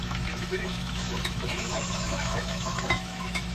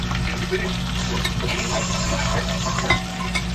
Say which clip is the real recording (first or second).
second